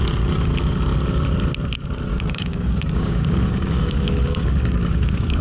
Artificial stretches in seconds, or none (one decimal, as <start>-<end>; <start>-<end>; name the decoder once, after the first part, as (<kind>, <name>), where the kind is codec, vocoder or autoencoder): 2.1-5.4 (codec, DAC)